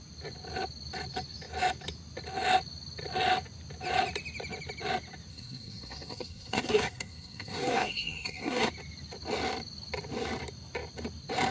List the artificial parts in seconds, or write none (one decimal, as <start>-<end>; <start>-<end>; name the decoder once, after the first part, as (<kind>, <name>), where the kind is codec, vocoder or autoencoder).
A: 5.3-8.7 (codec, SNAC)